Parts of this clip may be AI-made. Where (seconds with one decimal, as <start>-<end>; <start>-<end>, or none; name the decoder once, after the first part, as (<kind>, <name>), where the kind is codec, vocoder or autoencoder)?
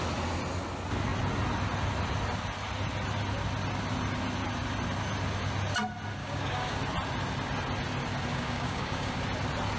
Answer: 6.2-6.8 (codec, DAC); 8.3-9.1